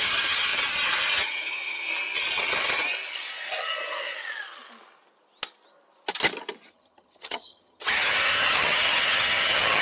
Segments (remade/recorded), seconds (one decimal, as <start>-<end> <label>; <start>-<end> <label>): 0.0-0.5 remade; 0.5-1.1 recorded; 1.1-1.9 remade; 1.9-6.7 recorded; 6.7-9.8 remade